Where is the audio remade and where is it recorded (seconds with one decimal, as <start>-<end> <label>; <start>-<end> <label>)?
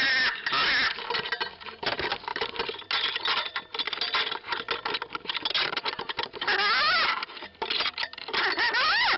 0.0-9.2 recorded